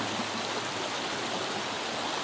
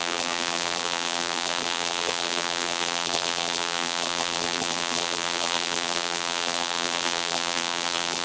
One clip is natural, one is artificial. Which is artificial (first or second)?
second